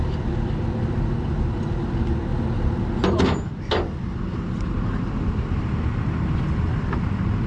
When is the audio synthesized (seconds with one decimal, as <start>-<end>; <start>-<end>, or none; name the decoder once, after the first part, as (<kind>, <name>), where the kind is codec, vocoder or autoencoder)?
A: none